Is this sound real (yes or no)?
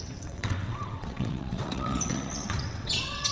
no